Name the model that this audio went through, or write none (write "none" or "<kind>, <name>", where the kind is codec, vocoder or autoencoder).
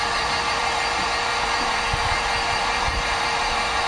vocoder, BigVGAN v2